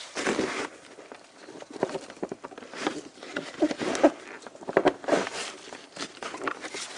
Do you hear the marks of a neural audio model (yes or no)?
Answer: yes